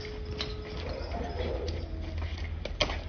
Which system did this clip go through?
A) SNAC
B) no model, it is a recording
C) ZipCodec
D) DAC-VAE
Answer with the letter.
B